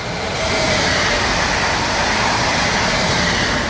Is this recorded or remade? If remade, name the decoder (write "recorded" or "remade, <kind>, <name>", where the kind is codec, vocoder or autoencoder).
recorded